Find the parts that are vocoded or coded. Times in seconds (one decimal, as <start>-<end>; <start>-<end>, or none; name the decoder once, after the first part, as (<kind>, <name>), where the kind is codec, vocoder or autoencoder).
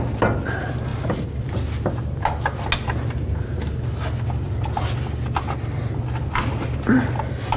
0.9-1.5 (vocoder, BigVGAN v2)